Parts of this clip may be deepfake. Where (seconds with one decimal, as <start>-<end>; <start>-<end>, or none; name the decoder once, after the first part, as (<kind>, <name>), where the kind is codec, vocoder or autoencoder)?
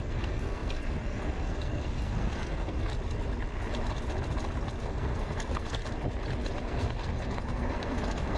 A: 0.0-2.9 (codec, SNAC); 4.8-5.8; 6.6-8.4